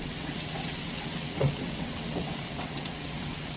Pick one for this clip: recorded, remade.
remade